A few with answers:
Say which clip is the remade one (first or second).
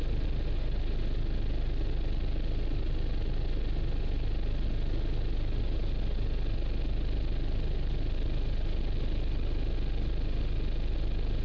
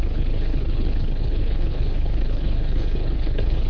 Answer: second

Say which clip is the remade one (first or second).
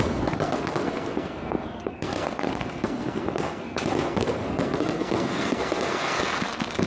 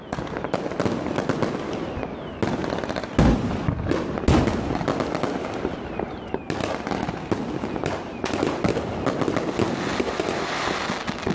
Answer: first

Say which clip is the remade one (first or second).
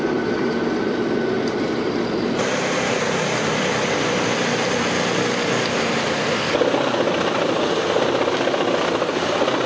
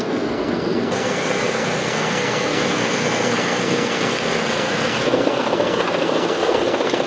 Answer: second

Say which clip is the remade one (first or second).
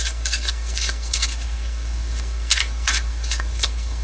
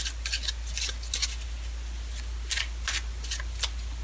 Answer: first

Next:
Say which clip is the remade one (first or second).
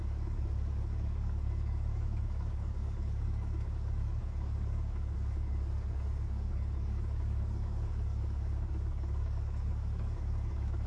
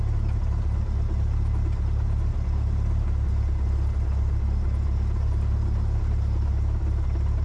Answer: first